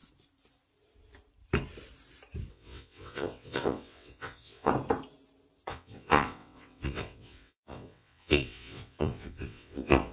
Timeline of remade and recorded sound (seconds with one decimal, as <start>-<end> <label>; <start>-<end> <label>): 0.0-2.5 recorded; 2.5-4.7 remade; 4.7-5.7 recorded; 5.7-10.1 remade